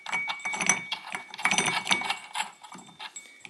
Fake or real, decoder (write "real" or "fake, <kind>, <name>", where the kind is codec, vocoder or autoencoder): real